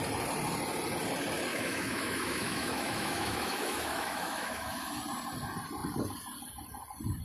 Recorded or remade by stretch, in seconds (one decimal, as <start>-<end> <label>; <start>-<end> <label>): 0.0-1.5 recorded; 1.5-5.0 remade; 5.0-7.2 recorded